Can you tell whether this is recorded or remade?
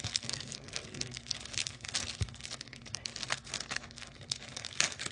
remade